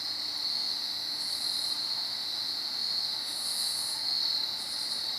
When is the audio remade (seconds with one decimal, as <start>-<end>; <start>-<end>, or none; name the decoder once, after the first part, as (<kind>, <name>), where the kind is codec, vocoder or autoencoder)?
0.5-1.2 (autoencoder, DAC-VAE); 1.8-4.2